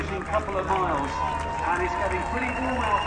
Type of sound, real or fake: real